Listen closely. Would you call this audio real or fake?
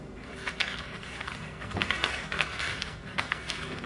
fake